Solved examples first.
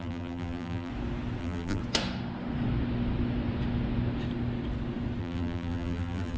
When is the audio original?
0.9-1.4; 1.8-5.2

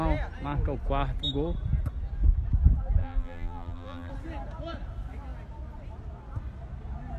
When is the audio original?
0.0-3.0; 4.1-7.2

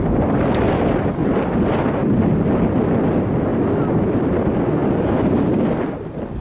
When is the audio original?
1.2-2.6; 3.5-4.1